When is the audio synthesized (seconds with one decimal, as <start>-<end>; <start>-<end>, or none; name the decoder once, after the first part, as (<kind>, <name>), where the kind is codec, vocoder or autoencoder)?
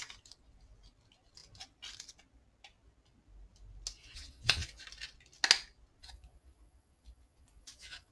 4.0-4.8 (vocoder, Vocos); 6.0-8.1